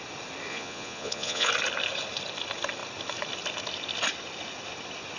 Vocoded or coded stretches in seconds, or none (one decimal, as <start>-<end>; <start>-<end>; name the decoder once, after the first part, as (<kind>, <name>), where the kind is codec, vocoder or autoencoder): 0.5-1.5 (vocoder, Vocos)